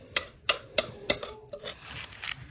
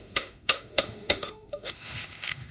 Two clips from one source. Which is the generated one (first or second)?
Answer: second